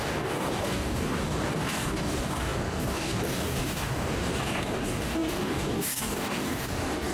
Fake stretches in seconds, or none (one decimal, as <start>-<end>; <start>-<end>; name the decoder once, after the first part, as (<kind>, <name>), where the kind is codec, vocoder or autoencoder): 0.0-7.1 (codec, DAC)